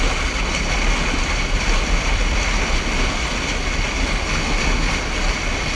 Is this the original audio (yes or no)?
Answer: yes